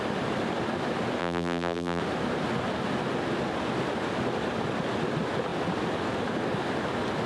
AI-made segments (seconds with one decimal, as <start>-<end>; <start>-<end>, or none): 1.2-2.0